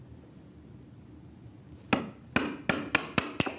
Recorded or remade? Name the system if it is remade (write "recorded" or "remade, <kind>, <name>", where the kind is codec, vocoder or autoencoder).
recorded